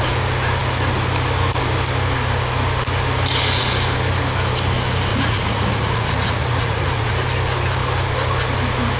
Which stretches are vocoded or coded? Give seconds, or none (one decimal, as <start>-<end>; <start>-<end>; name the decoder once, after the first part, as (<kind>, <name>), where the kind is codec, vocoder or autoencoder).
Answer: 5.1-7.1 (vocoder, Vocos)